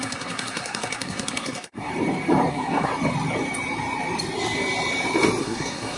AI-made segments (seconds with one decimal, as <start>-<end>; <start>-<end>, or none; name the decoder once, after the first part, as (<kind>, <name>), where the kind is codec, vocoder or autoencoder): 0.0-1.9 (codec, SNAC); 2.5-2.9; 5.4-6.0